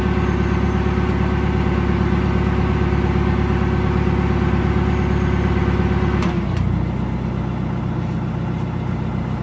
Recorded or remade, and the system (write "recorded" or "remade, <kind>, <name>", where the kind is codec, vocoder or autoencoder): recorded